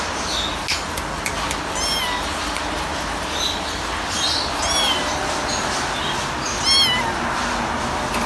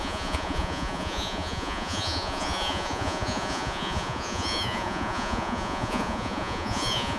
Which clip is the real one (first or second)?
first